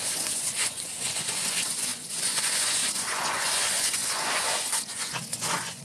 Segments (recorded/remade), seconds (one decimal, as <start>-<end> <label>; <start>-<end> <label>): 0.0-5.8 remade